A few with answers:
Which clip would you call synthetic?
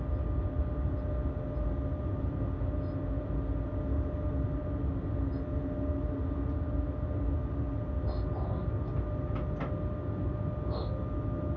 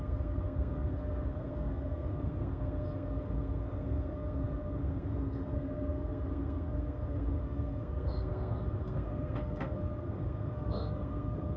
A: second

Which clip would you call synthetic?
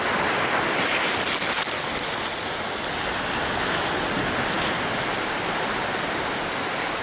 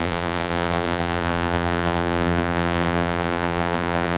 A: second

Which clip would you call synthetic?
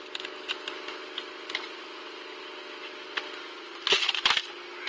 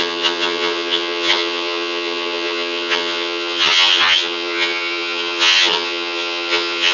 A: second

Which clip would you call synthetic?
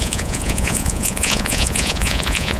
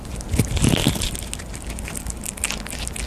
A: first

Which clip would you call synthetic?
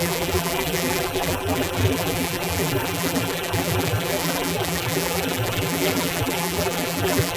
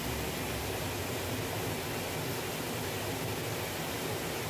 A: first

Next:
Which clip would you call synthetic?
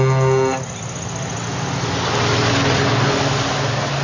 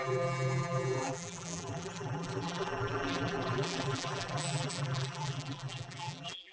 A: second